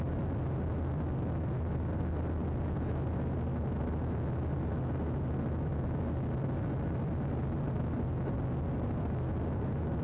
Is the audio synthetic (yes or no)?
no